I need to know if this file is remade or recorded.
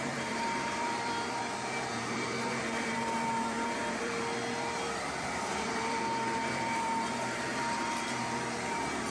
remade